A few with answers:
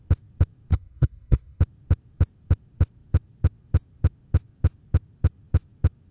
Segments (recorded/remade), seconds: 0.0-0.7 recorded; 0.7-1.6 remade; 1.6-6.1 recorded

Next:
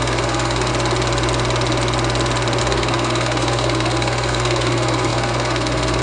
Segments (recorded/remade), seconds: 0.0-0.7 remade; 0.7-2.6 recorded; 2.6-6.0 remade

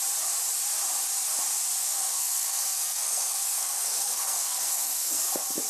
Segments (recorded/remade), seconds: 0.0-1.8 recorded; 1.8-5.2 remade; 5.2-5.7 recorded

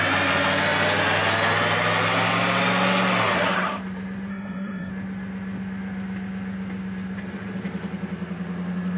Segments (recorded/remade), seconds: 0.0-4.3 recorded; 4.3-4.9 remade; 4.9-9.0 recorded

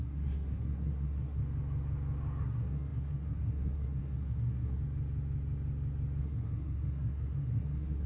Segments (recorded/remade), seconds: 0.0-1.4 remade; 1.4-2.4 recorded; 2.4-4.8 remade; 4.8-6.2 recorded; 6.2-8.1 remade

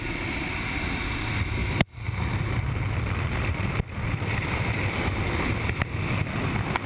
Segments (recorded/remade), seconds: 0.0-6.9 recorded

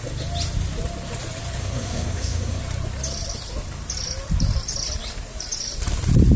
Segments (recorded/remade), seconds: 0.0-1.6 recorded; 1.6-2.6 remade; 2.6-6.4 recorded